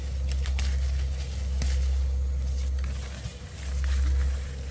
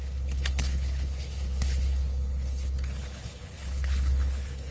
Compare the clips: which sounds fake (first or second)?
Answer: second